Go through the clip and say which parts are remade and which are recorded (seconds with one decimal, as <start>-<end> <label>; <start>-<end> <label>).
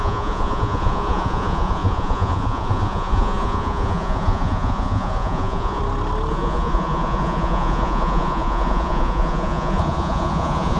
0.0-5.8 remade; 5.8-6.3 recorded; 6.3-10.8 remade